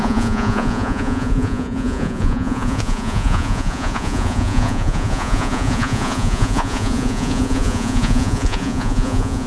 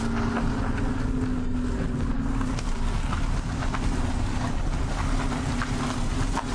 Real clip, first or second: second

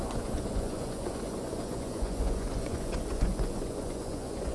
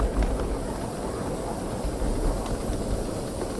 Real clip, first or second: second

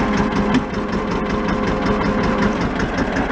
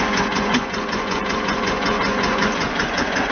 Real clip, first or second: first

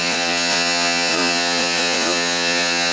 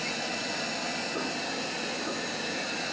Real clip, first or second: second